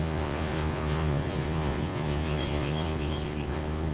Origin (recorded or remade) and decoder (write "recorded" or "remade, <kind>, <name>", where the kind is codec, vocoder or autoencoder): remade, vocoder, Vocos